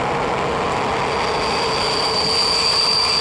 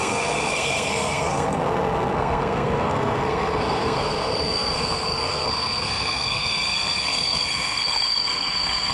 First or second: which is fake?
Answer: second